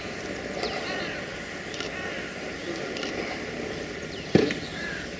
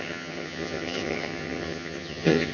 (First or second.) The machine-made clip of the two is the second